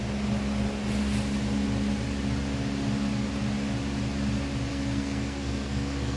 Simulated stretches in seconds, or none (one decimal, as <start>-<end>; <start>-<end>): 4.7-6.2